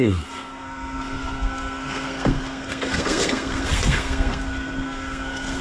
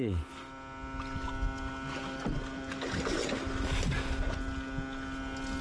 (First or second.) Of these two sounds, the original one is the second